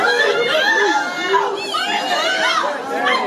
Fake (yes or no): no